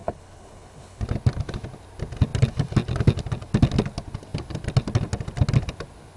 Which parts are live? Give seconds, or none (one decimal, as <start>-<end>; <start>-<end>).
1.0-6.2